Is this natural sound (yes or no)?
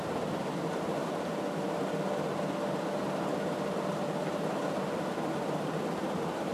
yes